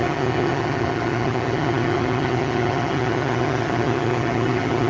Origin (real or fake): fake